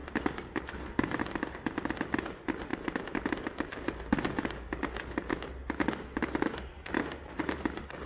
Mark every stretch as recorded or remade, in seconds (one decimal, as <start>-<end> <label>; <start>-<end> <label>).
0.0-8.1 recorded